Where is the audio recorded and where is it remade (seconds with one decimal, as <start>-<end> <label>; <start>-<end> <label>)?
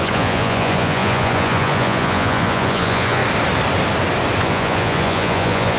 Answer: 0.0-3.2 remade; 3.2-4.4 recorded; 4.4-5.8 remade